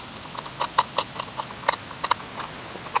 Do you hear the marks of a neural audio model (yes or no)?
no